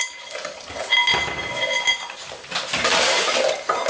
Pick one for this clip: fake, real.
real